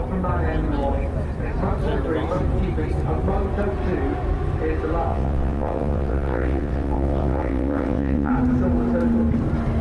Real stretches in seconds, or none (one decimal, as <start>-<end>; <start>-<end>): 0.0-5.1; 8.3-9.8